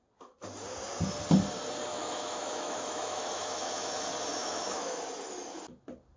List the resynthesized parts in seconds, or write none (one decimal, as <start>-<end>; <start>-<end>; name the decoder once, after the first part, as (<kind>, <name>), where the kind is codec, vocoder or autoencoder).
1.9-3.9 (autoencoder, DAC-VAE); 4.4-5.0